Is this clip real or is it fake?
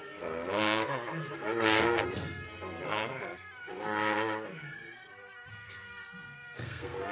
fake